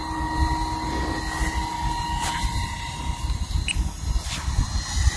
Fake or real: real